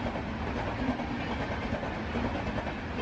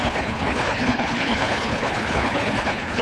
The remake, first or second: second